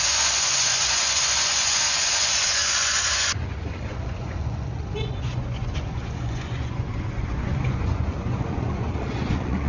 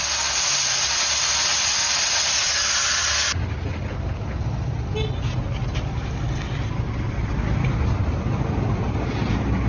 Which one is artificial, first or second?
first